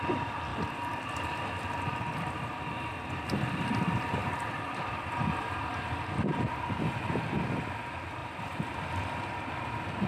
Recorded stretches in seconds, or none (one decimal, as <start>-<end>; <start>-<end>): 0.0-0.5; 2.0-4.2; 6.6-8.2; 9.3-10.1